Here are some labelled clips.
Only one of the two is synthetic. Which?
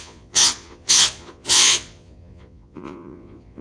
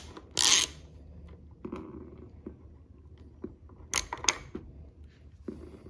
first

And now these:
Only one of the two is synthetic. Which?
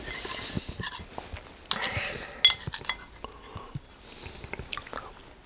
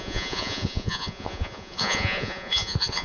second